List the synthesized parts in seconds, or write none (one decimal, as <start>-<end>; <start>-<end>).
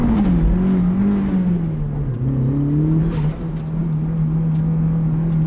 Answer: none